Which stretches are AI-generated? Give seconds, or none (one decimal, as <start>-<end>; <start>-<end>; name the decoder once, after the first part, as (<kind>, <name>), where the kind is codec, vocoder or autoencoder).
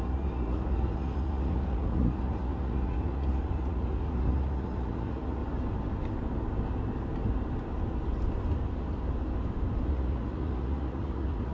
0.0-5.4 (vocoder, Vocos); 9.9-11.5